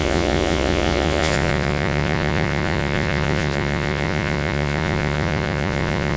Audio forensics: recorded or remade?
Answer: remade